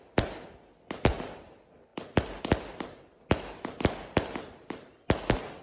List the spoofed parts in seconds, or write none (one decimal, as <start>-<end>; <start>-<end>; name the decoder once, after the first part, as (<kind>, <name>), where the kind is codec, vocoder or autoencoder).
none